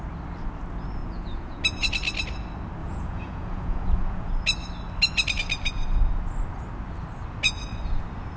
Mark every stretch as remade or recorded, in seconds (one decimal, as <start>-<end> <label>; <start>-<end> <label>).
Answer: 0.0-1.0 recorded; 1.0-1.6 remade; 1.6-2.8 recorded; 2.8-4.3 remade; 4.3-8.4 recorded